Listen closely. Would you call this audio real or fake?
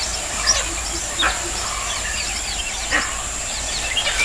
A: real